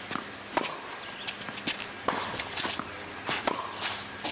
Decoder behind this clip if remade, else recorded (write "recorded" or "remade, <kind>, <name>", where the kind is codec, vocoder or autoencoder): recorded